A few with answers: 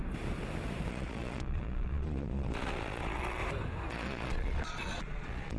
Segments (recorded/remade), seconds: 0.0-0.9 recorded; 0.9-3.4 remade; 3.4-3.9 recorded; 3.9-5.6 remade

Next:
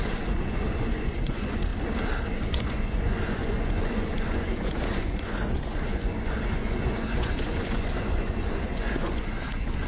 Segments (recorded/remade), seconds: 0.0-1.7 remade; 1.7-2.3 recorded; 2.3-9.9 remade

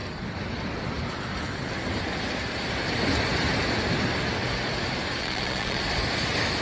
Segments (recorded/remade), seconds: 0.0-5.2 recorded; 5.2-5.8 remade; 5.8-6.6 recorded

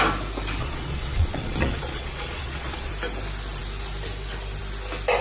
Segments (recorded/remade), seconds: 0.0-0.6 recorded; 0.6-2.9 remade; 2.9-5.2 recorded

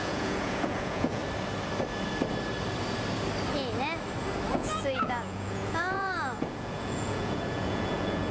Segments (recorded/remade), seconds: 0.0-1.2 remade; 1.2-4.5 recorded; 4.5-8.3 remade

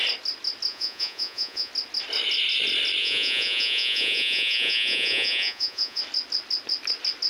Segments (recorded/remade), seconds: 0.0-0.7 recorded; 0.7-1.7 remade; 1.7-3.0 recorded; 3.0-6.0 remade; 6.0-7.3 recorded